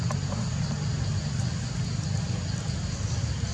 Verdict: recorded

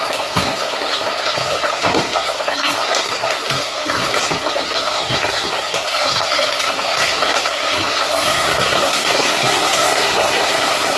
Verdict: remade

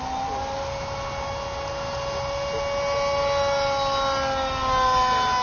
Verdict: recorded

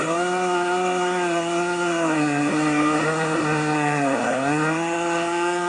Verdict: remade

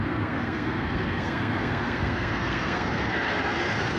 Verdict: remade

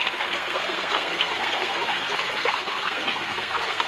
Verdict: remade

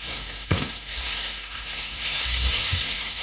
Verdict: remade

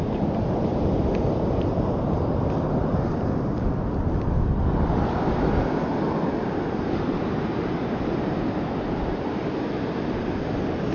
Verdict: recorded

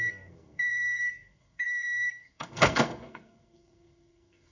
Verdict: remade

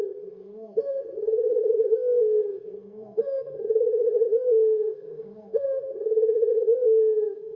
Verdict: remade